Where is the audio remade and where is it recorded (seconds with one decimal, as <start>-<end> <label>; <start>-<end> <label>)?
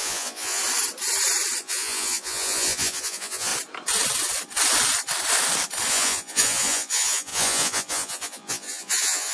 0.0-0.6 remade; 0.6-1.6 recorded; 1.6-3.5 remade; 3.5-5.9 recorded; 5.9-9.3 remade